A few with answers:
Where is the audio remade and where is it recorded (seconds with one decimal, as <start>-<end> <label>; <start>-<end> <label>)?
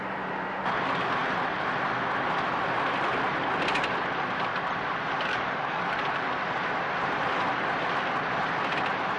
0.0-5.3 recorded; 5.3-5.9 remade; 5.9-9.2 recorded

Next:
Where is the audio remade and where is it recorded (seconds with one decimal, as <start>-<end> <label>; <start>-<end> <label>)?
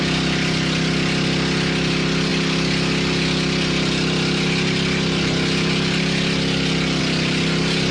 0.0-7.9 recorded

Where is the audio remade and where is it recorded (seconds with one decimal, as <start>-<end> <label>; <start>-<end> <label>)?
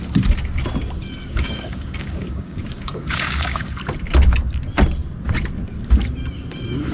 0.0-1.3 recorded; 1.3-3.8 remade; 3.8-6.9 recorded